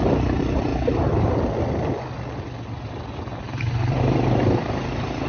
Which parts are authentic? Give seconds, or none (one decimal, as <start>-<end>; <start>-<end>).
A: 0.7-3.9